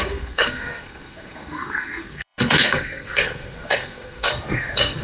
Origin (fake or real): fake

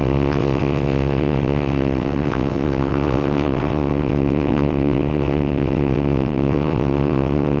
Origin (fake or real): fake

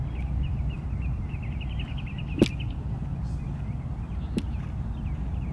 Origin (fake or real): real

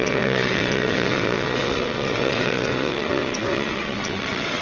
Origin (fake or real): fake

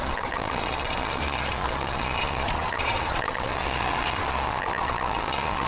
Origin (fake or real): fake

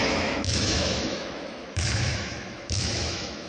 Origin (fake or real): fake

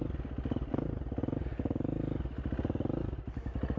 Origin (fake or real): real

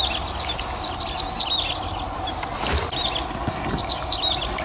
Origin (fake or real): real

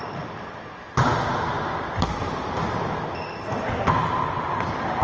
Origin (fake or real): real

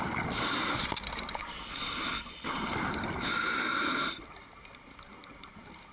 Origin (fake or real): real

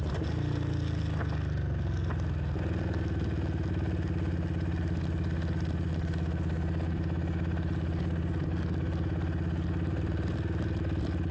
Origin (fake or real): real